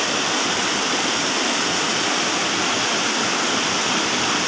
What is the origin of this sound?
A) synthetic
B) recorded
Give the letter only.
B